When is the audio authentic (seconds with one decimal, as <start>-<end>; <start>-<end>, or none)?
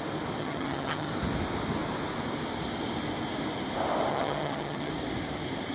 0.0-0.4; 1.1-4.1; 4.9-5.7